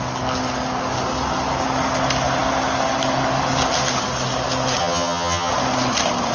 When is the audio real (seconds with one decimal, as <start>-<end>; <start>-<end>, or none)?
0.0-4.8; 5.5-6.3